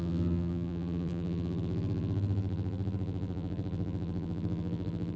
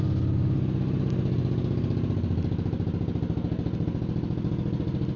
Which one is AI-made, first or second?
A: first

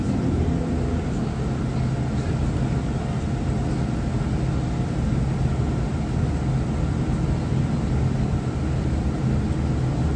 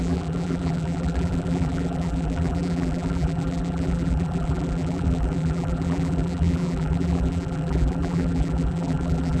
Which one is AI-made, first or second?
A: second